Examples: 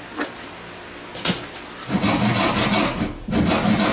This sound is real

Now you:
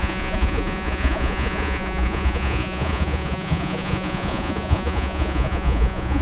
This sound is fake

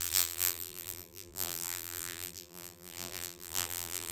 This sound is fake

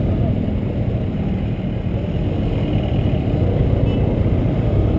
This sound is real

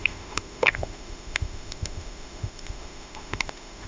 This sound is fake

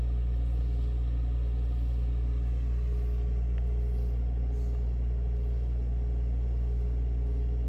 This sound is real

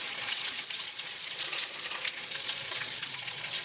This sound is fake